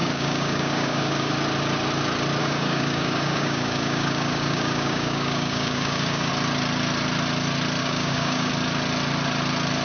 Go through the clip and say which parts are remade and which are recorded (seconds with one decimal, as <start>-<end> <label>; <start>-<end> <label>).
0.0-1.3 remade; 1.3-2.4 recorded; 2.4-6.3 remade; 6.3-7.8 recorded; 7.8-8.5 remade; 8.5-9.8 recorded